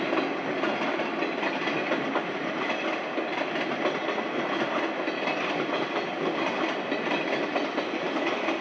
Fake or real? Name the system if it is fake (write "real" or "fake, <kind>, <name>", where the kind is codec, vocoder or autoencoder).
real